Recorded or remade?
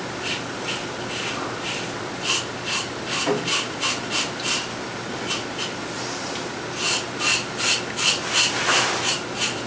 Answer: recorded